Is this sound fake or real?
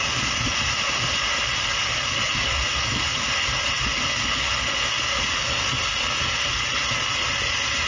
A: real